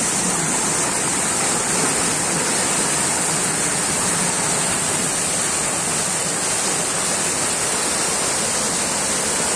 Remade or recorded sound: recorded